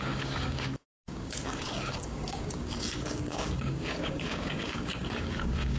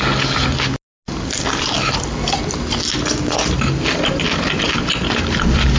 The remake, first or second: first